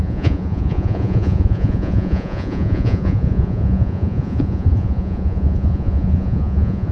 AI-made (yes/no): yes